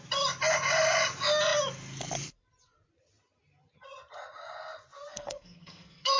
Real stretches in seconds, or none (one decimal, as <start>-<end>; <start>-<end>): 0.0-5.1